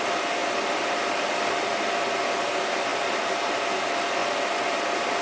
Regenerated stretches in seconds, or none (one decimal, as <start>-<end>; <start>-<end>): none